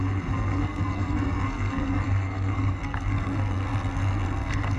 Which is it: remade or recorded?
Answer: remade